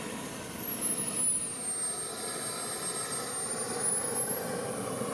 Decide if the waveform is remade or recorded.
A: recorded